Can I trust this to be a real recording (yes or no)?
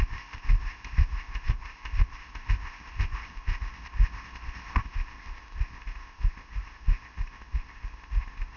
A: no